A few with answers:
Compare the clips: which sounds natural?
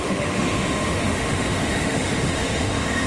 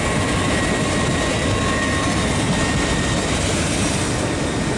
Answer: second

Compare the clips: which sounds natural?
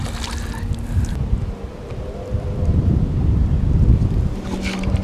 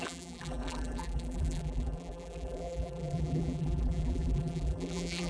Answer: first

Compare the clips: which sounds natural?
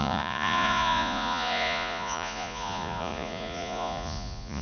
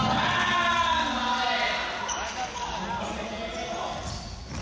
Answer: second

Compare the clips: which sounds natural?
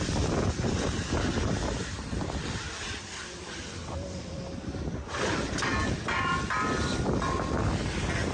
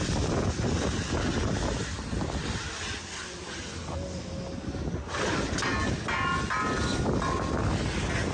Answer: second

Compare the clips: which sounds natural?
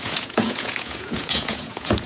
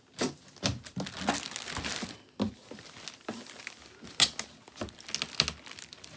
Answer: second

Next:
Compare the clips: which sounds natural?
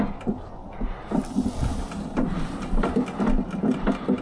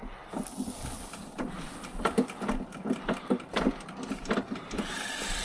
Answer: first